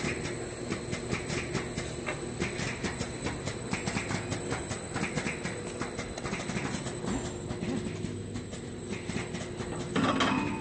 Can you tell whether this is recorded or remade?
recorded